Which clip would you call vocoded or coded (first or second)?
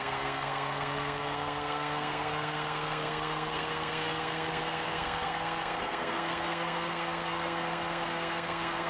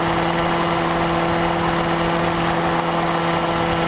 first